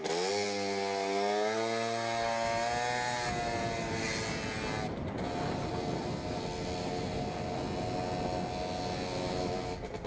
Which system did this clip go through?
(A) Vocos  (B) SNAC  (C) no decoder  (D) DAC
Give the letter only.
C